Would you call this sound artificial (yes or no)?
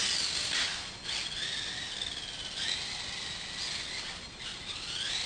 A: no